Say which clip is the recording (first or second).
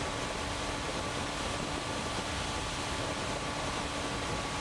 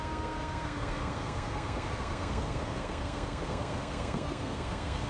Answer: first